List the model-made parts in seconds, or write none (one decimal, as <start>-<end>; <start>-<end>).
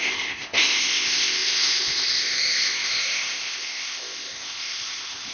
0.0-5.3